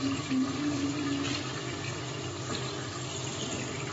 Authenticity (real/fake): real